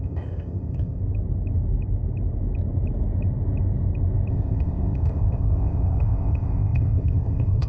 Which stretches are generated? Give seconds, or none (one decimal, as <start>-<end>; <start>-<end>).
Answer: 0.0-1.0; 4.3-7.7